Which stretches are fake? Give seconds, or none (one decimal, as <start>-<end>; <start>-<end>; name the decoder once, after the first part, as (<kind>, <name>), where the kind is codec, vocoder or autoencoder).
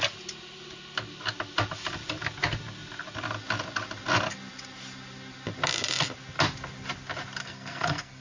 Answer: 7.4-8.2 (codec, SNAC)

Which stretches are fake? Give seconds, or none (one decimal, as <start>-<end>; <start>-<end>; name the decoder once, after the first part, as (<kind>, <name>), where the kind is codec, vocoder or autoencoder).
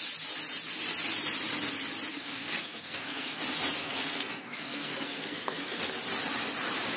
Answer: 2.1-3.4 (codec, SNAC); 3.8-5.9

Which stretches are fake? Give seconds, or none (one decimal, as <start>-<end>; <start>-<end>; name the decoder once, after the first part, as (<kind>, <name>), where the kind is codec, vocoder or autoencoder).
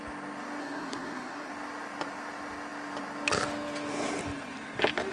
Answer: 0.6-1.5 (codec, SNAC)